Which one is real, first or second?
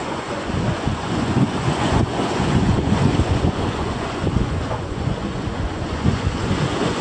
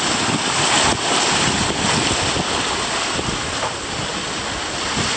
second